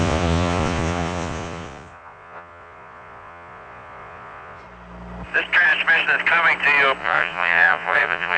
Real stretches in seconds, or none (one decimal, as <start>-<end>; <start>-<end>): 4.6-7.0